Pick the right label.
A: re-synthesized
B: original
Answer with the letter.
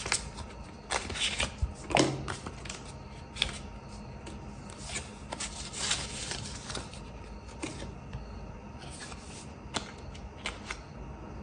B